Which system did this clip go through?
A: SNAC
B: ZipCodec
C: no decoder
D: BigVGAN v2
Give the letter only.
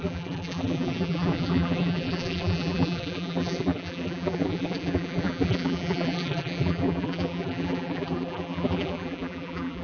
D